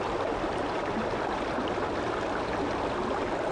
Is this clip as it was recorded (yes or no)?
yes